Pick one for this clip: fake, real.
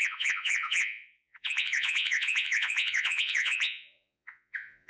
fake